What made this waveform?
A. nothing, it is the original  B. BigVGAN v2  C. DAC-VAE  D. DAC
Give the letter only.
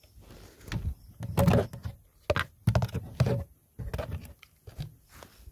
A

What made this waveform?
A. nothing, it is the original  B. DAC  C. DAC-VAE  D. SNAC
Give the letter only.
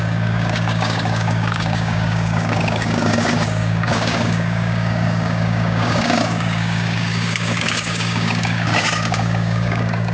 B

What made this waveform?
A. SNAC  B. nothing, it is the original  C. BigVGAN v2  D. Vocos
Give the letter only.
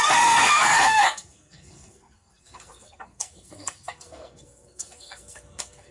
A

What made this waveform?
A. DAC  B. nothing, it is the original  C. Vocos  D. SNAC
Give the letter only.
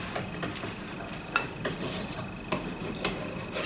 B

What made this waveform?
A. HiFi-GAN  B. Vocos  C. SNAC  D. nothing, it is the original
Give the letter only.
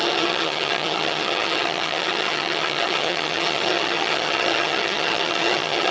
A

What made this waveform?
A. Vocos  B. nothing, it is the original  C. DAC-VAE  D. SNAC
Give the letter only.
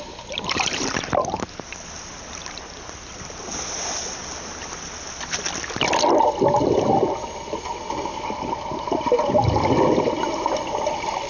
B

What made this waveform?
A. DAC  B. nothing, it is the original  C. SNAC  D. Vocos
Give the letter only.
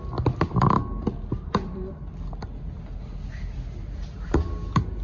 B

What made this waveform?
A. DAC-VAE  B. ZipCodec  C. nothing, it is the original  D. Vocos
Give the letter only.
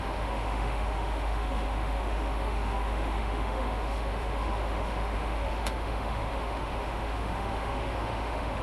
A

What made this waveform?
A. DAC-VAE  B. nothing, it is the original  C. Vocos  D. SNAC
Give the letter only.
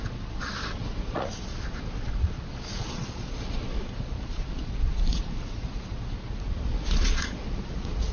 C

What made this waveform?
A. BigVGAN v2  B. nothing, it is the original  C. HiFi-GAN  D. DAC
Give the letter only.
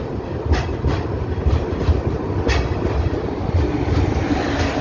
B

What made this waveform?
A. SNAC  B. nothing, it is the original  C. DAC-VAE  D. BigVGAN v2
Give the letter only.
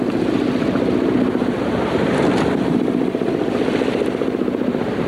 B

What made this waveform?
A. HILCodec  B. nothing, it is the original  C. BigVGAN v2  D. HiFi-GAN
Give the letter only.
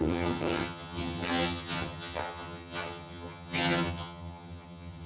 D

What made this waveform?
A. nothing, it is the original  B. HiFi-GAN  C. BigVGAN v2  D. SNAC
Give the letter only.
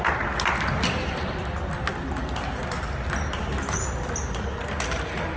A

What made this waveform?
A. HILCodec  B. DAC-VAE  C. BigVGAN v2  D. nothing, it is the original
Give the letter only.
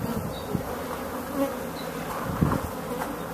D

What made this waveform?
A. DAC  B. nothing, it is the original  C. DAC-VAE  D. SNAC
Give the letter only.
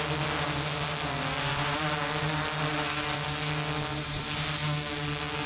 B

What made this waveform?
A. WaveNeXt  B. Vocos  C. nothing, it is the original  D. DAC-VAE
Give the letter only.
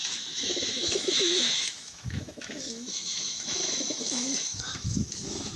D